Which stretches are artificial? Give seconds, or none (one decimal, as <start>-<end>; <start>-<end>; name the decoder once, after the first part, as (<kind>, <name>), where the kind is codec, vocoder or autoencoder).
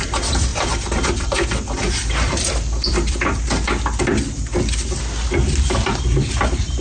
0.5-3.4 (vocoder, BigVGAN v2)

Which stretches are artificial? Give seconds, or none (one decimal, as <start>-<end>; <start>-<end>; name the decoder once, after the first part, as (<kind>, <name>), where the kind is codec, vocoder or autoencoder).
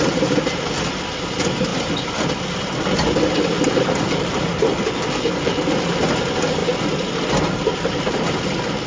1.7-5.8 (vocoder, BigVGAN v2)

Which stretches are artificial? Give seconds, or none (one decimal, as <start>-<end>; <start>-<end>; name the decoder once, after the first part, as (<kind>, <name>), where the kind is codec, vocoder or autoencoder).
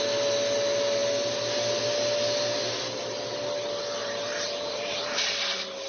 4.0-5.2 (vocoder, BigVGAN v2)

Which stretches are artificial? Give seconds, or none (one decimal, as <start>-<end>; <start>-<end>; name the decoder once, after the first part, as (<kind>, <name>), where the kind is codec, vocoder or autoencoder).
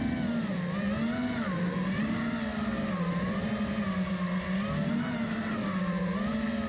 2.5-4.1 (vocoder, BigVGAN v2)